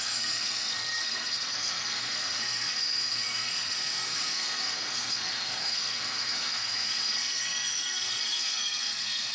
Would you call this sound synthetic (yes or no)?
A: yes